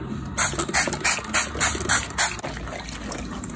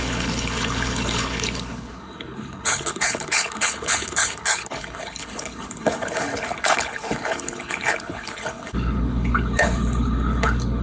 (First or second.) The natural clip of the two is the first